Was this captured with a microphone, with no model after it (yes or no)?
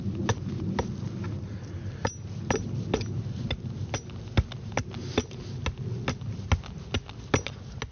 yes